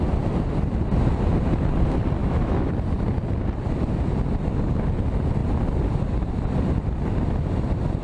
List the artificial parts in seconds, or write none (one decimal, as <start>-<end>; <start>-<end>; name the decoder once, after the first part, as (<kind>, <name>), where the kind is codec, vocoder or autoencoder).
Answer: 2.2-2.7 (autoencoder, DAC-VAE)

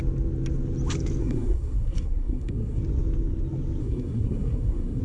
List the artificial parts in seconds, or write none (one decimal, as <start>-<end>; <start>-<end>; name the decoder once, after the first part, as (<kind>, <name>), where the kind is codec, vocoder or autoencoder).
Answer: 1.2-2.8 (codec, SNAC); 3.8-5.0

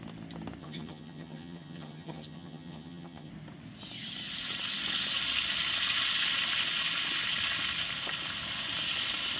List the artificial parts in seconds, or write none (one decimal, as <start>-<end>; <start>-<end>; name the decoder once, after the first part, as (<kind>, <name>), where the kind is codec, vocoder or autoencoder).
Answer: 0.6-3.3 (vocoder, HiFi-GAN)

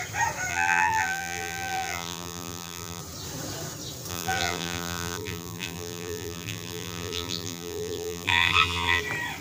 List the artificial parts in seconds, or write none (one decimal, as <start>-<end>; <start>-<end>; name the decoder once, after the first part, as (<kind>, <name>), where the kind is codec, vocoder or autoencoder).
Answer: 0.5-3.0 (vocoder, BigVGAN v2); 4.1-9.0